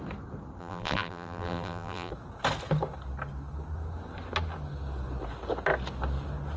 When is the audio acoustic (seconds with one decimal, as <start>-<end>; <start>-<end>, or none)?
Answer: 0.0-0.6; 2.1-6.6